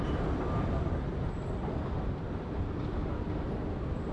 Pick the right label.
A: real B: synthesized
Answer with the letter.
B